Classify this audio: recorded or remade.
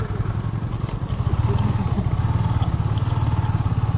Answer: recorded